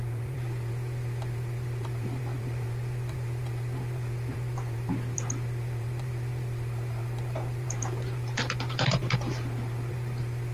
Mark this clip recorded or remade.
remade